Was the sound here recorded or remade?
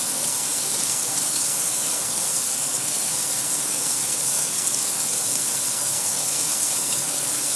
remade